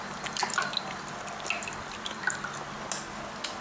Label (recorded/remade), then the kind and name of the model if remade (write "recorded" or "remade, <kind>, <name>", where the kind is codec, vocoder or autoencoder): recorded